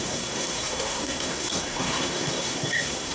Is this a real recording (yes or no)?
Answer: no